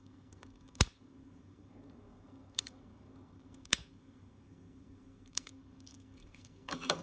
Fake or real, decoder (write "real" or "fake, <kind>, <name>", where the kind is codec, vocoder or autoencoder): fake, codec, SNAC